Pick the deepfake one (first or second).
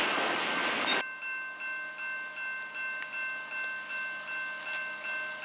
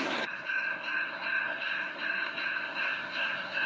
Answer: second